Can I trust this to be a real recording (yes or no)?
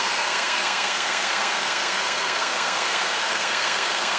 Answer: no